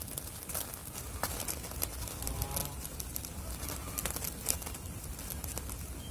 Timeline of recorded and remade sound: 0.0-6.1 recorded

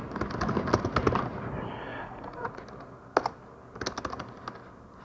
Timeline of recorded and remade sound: 0.0-1.9 recorded; 1.9-2.6 remade; 2.6-5.0 recorded

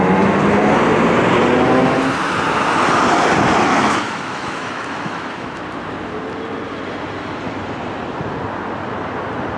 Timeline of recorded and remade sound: 0.0-3.7 recorded; 3.7-5.6 remade; 5.6-9.6 recorded

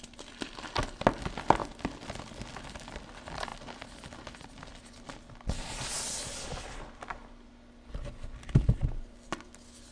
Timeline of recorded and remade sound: 0.0-9.9 recorded